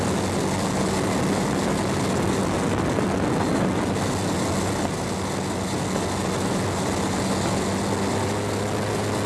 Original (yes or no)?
yes